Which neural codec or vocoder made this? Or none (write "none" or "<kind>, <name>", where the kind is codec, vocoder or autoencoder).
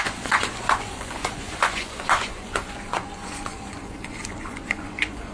vocoder, Vocos